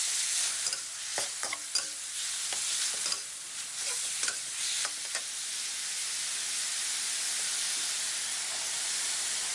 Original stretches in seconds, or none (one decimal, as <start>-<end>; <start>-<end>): 0.0-9.5